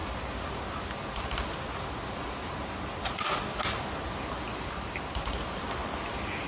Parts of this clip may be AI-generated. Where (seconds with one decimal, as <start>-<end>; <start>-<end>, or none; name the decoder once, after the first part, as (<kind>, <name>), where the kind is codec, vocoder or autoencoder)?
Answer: 4.5-5.4 (vocoder, BigVGAN v2)